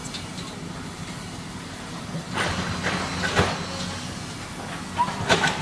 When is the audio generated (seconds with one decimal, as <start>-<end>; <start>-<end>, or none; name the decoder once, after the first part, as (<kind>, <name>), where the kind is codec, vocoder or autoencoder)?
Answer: none